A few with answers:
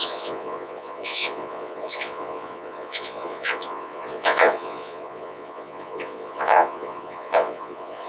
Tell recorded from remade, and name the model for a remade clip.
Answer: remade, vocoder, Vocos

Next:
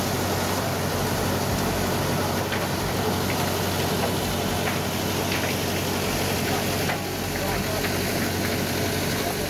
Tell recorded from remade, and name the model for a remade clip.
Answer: recorded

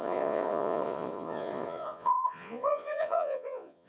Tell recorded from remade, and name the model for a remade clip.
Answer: remade, vocoder, Vocos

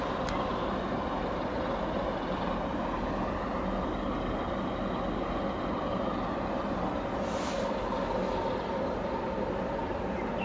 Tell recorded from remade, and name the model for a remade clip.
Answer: recorded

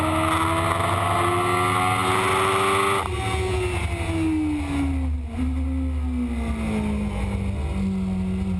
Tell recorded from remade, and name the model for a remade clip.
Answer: recorded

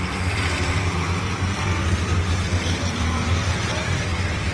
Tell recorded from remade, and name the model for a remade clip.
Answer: remade, vocoder, BigVGAN v2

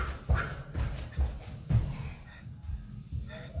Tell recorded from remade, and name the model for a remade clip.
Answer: recorded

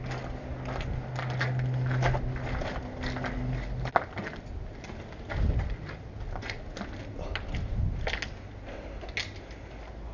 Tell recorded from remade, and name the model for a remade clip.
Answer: recorded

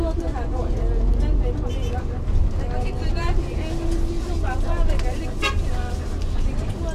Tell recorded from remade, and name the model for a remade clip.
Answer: recorded